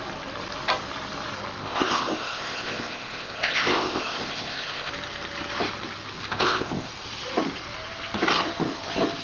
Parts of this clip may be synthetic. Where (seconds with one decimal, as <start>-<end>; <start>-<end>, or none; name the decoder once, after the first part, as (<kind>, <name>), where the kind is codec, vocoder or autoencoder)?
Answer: 1.6-4.9 (codec, ZipCodec); 6.2-6.9